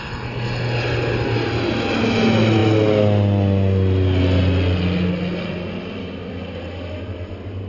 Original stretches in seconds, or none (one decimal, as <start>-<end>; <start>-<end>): 0.0-7.7